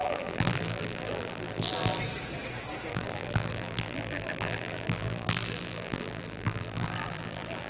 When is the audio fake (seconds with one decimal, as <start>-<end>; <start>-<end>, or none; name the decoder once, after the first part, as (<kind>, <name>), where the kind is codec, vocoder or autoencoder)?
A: 0.0-2.0 (vocoder, BigVGAN v2); 2.9-7.7